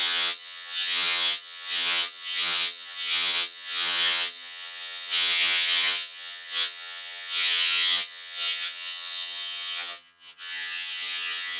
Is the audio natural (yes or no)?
no